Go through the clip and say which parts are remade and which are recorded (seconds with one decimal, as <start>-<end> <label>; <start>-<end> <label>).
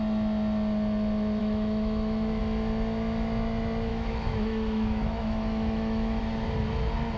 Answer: 0.0-1.4 recorded; 1.4-2.4 remade; 2.4-3.9 recorded; 3.9-6.2 remade; 6.2-7.2 recorded